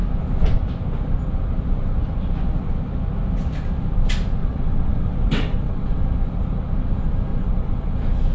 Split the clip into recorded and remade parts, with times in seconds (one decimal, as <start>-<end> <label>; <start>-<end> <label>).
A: 0.0-4.4 recorded; 4.4-6.1 remade; 6.1-7.3 recorded; 7.3-7.9 remade; 7.9-8.3 recorded